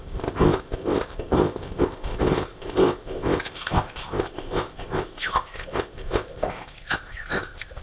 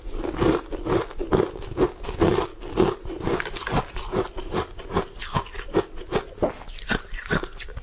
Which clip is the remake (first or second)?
first